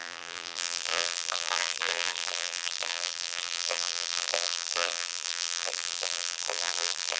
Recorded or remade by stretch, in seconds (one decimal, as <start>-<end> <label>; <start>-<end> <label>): 0.0-7.2 remade